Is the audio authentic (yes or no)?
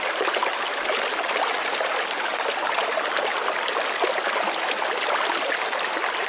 yes